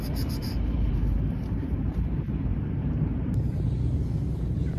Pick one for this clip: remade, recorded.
remade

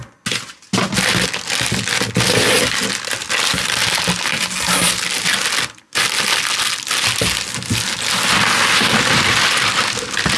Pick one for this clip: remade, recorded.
recorded